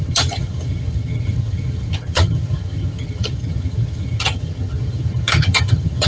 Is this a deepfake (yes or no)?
yes